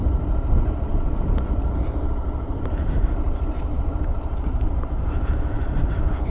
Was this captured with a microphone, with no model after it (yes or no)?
yes